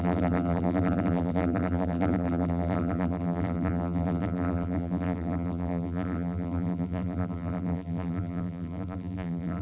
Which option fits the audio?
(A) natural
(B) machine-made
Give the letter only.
B